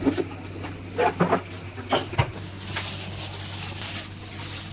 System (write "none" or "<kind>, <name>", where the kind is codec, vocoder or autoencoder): none